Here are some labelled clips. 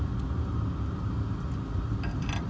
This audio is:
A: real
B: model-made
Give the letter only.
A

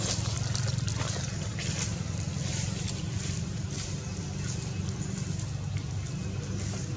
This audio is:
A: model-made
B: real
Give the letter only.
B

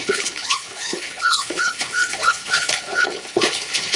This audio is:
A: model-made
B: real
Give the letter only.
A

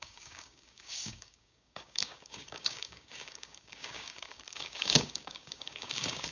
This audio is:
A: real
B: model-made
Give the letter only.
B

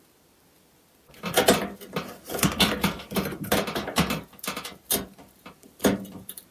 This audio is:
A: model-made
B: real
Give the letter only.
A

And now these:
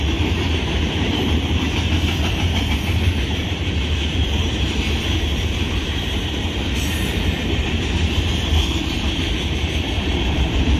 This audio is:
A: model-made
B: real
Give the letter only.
A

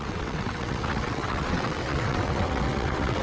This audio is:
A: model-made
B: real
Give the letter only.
A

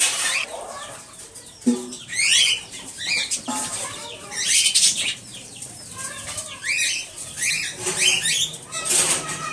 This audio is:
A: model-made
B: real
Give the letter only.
A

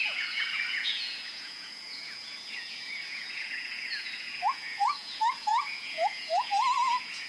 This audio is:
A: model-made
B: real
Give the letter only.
A